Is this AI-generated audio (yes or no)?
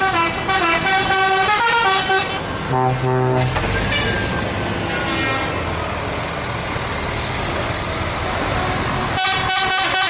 no